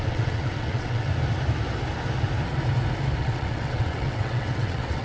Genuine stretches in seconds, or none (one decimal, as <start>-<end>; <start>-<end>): 1.1-3.2